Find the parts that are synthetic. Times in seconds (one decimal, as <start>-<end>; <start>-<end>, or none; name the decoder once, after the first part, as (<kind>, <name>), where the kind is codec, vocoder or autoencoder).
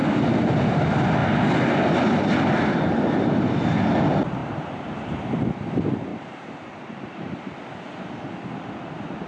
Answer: 4.4-5.1 (vocoder, BigVGAN v2); 6.1-7.6